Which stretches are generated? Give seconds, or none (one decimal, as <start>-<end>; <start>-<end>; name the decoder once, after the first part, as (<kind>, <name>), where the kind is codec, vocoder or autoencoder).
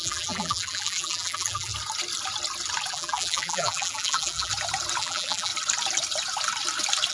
0.0-1.7 (vocoder, BigVGAN v2); 2.9-4.5; 5.0-5.5